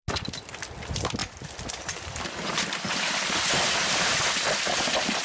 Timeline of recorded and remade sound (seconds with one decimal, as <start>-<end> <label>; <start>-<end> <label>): 0.0-1.2 recorded; 1.2-4.3 remade; 4.3-5.2 recorded